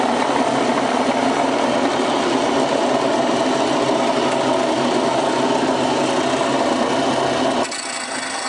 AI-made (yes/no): no